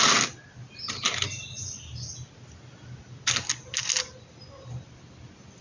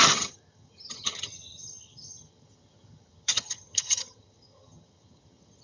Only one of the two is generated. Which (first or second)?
second